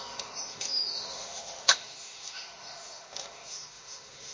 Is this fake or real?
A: fake